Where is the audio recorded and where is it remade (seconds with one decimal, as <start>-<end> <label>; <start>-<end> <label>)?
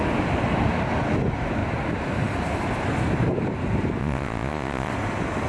0.0-4.0 recorded; 4.0-4.9 remade; 4.9-5.5 recorded